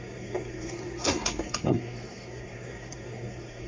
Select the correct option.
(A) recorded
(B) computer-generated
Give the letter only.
B